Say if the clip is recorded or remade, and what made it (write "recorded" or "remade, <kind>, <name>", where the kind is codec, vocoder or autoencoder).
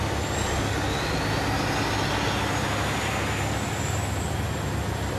recorded